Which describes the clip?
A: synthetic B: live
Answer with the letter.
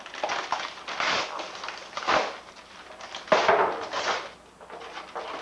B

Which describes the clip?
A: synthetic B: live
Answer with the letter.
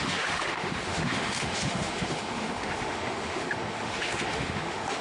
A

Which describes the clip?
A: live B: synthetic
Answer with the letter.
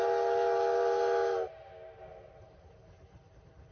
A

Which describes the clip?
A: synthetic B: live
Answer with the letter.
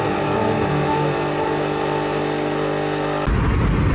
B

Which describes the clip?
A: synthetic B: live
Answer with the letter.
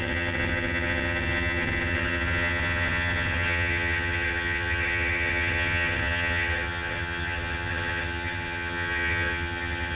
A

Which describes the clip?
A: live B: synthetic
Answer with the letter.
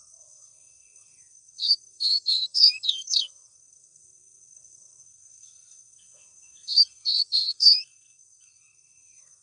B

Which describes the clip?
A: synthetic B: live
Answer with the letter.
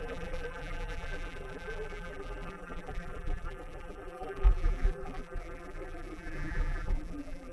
A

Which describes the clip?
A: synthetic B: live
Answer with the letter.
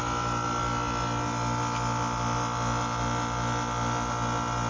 B